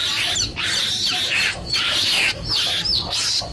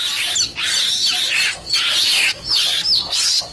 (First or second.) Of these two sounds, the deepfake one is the first